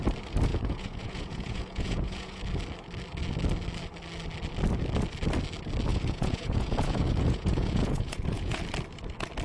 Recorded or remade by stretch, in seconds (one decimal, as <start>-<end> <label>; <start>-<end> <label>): 0.0-0.5 recorded; 0.5-2.4 remade; 2.4-5.9 recorded; 5.9-8.6 remade; 8.6-9.4 recorded